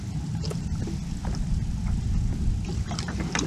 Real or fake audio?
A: real